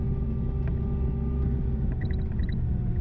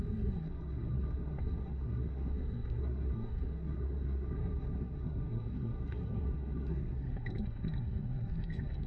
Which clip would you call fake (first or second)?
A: second